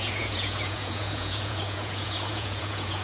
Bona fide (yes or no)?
no